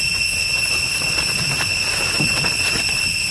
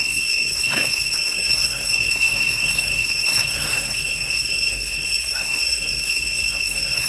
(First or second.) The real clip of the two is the first